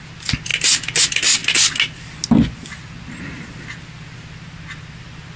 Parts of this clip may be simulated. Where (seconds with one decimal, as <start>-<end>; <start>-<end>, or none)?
none